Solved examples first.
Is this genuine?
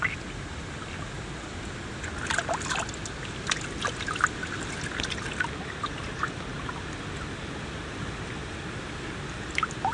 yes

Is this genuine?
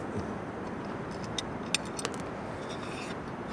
yes